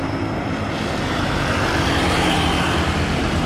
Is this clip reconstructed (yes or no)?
yes